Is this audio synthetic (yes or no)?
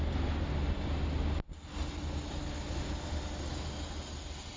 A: no